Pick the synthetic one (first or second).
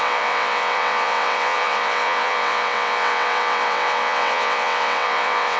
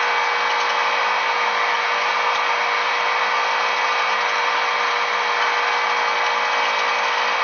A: first